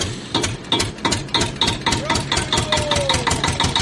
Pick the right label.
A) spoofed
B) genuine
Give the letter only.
B